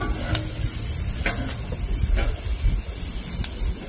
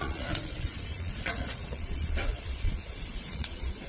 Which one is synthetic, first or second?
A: second